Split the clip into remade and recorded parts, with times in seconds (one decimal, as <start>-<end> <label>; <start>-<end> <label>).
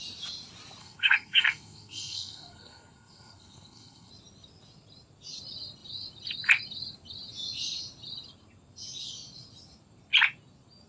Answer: 0.0-0.8 recorded; 0.8-4.1 remade; 4.1-10.9 recorded